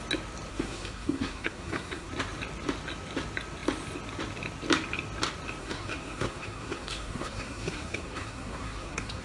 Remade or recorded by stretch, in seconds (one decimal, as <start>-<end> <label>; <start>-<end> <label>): 0.0-0.5 recorded; 0.5-2.1 remade; 2.1-5.6 recorded; 5.6-9.2 remade